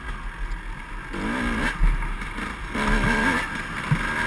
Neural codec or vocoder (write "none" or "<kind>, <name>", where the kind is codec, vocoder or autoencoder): none